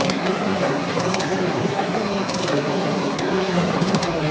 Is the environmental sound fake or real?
fake